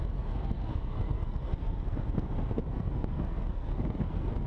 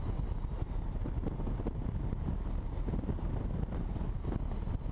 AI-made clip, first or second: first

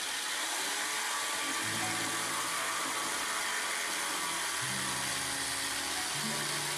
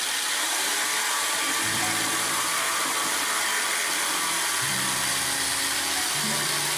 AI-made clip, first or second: second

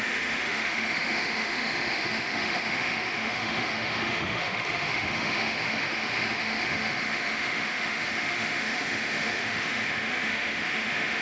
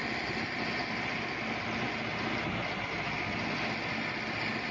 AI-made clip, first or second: first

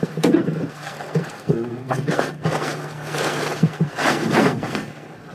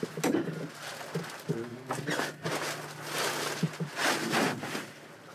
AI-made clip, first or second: first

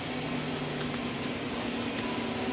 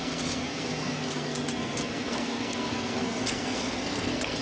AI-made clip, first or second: second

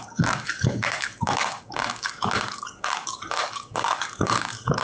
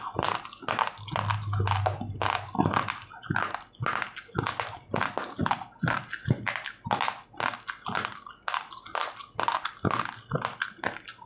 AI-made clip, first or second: first